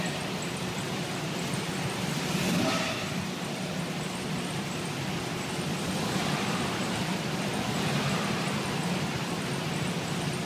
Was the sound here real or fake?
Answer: fake